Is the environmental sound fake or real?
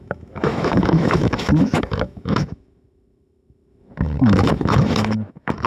fake